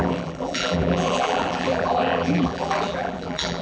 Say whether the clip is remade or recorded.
remade